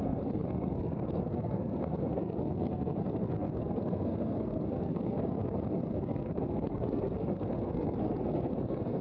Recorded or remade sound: remade